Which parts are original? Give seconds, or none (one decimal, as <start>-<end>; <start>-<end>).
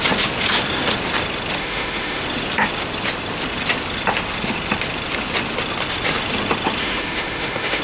0.0-1.6; 2.2-6.8